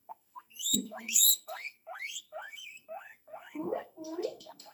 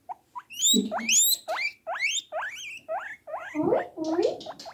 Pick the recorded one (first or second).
second